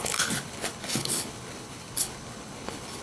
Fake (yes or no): yes